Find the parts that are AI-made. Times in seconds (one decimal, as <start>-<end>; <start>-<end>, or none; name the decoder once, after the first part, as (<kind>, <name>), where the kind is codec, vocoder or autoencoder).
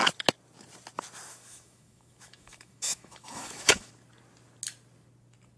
1.3-3.9 (autoencoder, DAC-VAE)